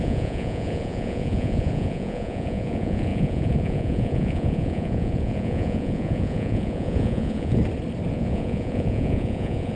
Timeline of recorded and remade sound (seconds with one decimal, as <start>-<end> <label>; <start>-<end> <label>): 0.0-7.6 remade; 7.6-8.1 recorded; 8.1-9.8 remade